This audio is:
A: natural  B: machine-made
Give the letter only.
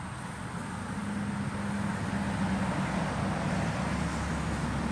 A